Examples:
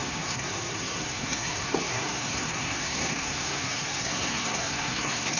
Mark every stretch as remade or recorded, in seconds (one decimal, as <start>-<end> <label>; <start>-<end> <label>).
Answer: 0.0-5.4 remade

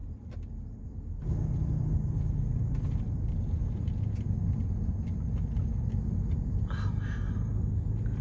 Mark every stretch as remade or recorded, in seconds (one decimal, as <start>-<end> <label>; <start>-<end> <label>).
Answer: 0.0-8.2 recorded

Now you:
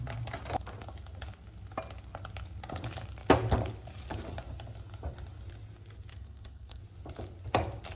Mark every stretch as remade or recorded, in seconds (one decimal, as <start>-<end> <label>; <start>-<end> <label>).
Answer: 0.0-6.1 recorded; 6.1-6.8 remade; 6.8-8.0 recorded

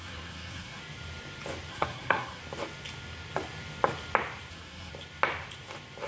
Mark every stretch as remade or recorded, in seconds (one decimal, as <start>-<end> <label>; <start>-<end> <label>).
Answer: 0.0-0.8 remade; 0.8-1.7 recorded; 1.7-2.4 remade; 2.4-4.5 recorded; 4.5-4.9 remade; 4.9-6.1 recorded

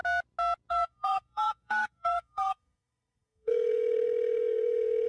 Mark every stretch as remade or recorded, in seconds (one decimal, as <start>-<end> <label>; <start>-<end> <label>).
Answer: 0.0-0.7 recorded; 0.7-5.1 remade

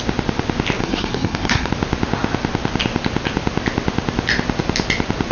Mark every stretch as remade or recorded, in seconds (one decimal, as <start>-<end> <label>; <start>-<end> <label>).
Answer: 0.0-0.8 recorded; 0.8-1.7 remade; 1.7-5.3 recorded

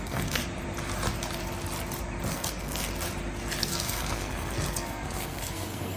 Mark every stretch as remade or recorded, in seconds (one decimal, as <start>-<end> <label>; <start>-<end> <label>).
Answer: 0.0-0.4 remade; 0.4-2.3 recorded; 2.3-2.9 remade; 2.9-3.6 recorded; 3.6-6.0 remade